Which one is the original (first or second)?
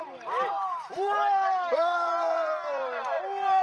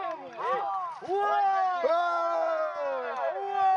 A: second